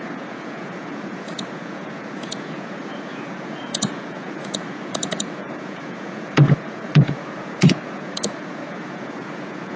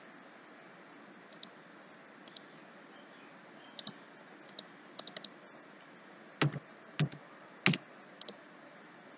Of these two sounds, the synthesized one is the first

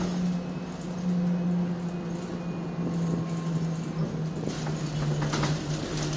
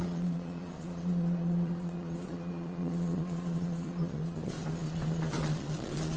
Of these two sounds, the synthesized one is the second